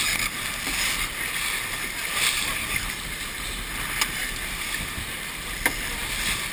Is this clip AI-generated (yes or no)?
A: no